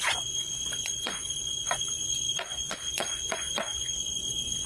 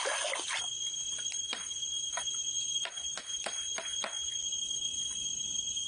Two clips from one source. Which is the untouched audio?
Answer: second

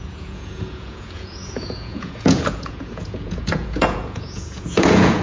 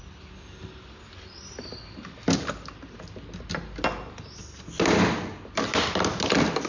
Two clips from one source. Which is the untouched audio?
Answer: second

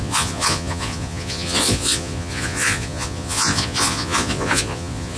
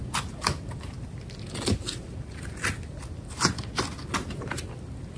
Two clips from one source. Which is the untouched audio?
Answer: second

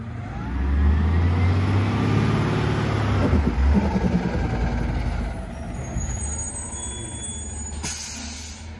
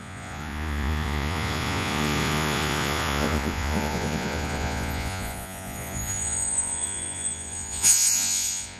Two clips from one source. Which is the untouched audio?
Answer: first